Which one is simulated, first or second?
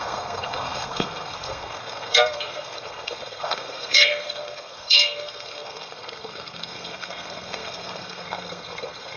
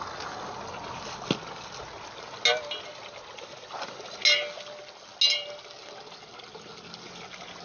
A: first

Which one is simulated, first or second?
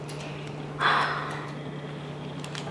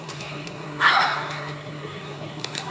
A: second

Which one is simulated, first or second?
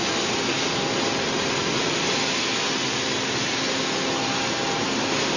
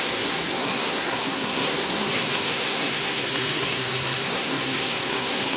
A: second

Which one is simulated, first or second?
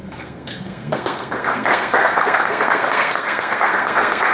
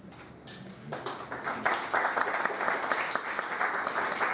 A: first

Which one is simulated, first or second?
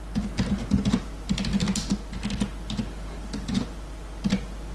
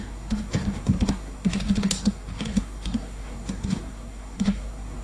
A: second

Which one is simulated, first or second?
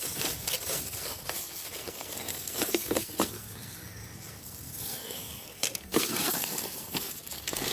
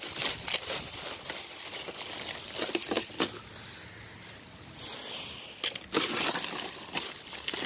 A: first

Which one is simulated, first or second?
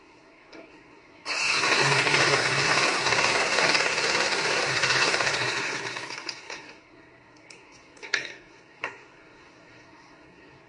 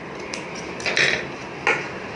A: first